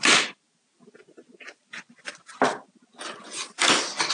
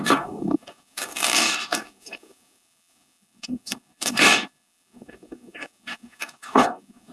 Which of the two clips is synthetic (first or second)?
second